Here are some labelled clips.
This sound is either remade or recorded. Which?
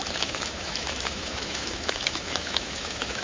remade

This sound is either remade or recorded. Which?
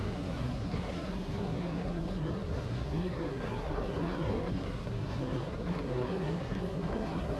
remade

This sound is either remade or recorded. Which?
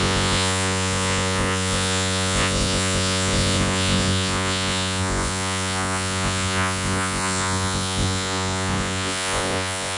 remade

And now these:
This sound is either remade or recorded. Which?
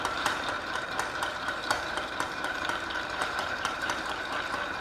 remade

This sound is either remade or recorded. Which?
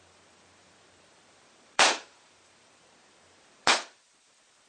remade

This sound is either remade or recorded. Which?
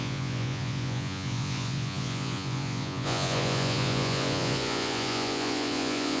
remade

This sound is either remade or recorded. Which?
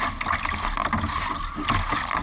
recorded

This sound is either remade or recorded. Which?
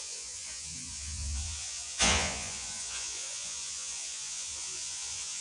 remade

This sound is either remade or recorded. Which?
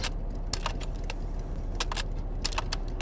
recorded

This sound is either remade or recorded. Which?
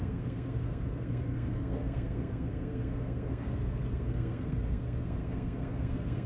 remade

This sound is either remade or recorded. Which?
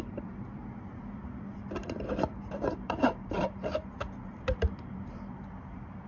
remade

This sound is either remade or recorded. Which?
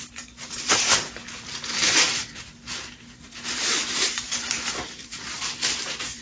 remade